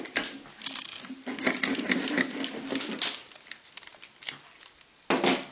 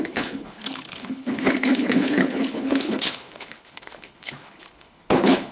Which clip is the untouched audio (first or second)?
first